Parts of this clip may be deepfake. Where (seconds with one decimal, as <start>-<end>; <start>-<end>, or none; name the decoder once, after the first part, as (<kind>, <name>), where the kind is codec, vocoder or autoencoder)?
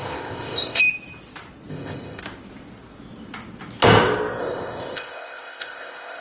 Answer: 0.0-0.8 (codec, ZipCodec); 1.7-2.2; 4.4-6.2